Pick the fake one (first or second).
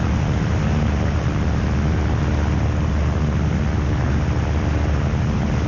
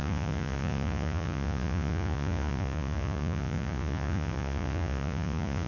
second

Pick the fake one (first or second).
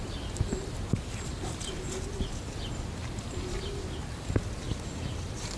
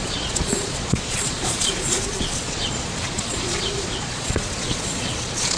second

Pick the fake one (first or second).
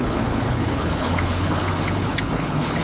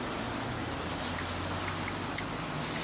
first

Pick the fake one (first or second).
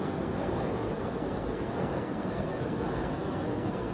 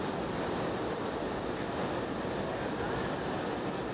first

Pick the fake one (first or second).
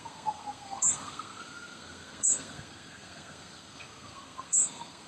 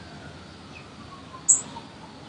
first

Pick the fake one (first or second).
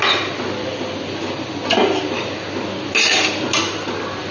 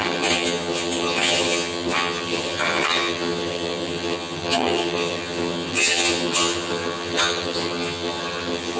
second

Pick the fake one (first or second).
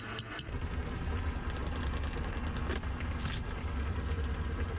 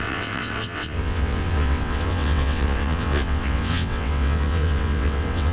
second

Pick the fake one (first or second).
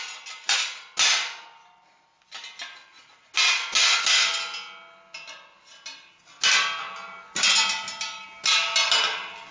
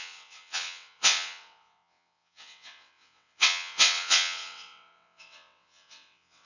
second